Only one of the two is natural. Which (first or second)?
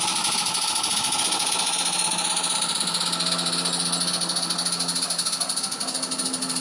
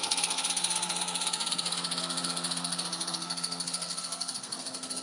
first